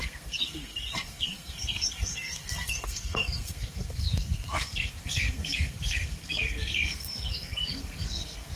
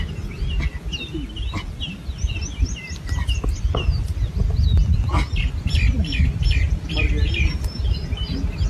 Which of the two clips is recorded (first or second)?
second